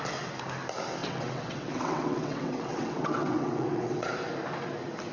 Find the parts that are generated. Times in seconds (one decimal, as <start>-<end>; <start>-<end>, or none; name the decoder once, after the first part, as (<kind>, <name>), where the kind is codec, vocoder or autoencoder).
1.0-4.1 (vocoder, WaveNeXt)